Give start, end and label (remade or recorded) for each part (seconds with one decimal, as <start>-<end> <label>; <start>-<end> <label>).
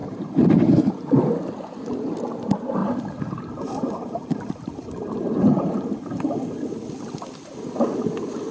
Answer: 0.0-0.9 remade; 0.9-2.8 recorded; 2.8-6.6 remade; 6.6-8.5 recorded